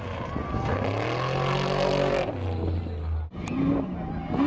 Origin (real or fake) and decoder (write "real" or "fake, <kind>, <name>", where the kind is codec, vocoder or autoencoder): real